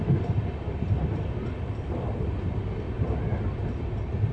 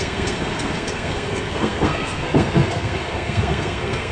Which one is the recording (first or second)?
first